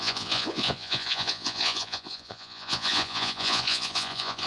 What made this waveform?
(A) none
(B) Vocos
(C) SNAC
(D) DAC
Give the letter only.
B